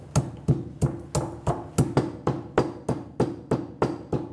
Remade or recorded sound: recorded